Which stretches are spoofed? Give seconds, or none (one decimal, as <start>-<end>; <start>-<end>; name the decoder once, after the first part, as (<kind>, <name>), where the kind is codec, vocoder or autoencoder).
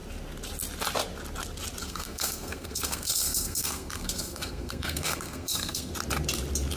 1.8-5.9 (codec, SNAC)